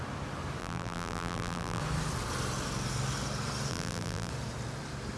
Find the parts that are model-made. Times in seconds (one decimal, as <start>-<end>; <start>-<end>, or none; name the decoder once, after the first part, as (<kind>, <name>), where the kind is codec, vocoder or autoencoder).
0.6-1.8 (vocoder, BigVGAN v2); 3.7-4.3